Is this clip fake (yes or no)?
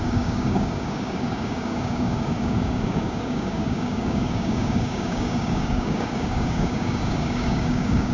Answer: yes